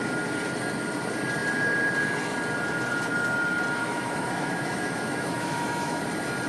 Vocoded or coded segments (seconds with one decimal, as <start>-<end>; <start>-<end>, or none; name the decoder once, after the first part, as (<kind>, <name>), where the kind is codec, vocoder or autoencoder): 3.8-6.0 (autoencoder, DAC-VAE)